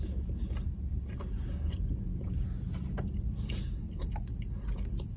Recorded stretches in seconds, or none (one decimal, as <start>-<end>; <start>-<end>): 0.0-5.2